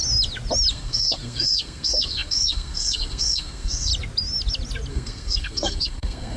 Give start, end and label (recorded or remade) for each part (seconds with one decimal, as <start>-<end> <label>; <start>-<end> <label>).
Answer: 0.0-0.7 recorded; 0.7-3.9 remade; 3.9-4.9 recorded; 4.9-6.4 remade

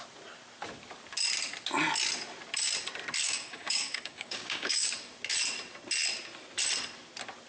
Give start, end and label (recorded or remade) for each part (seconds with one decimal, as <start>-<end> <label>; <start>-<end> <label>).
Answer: 0.0-3.2 recorded; 3.2-4.9 remade; 4.9-7.5 recorded

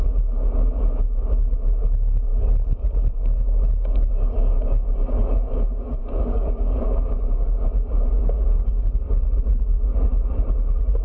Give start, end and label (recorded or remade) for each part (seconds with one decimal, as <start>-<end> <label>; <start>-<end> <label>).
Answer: 0.0-2.3 recorded; 2.3-4.0 remade; 4.0-6.0 recorded; 6.0-7.4 remade; 7.4-8.2 recorded; 8.2-9.0 remade; 9.0-11.0 recorded